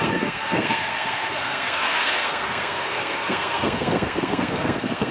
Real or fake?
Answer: fake